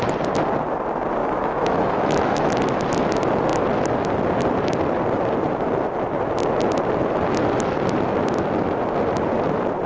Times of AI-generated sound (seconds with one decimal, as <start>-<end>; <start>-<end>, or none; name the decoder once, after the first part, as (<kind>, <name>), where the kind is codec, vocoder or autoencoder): 1.2-2.5 (autoencoder, DAC-VAE)